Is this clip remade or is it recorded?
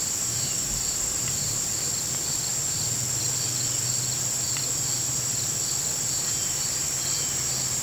recorded